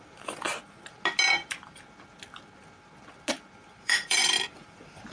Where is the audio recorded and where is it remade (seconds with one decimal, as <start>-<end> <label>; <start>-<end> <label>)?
0.0-0.5 remade; 0.5-3.6 recorded; 3.6-5.1 remade